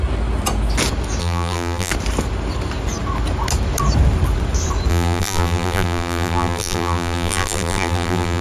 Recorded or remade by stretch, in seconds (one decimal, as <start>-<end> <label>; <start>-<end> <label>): 0.0-1.2 recorded; 1.2-1.9 remade; 1.9-4.9 recorded; 4.9-8.4 remade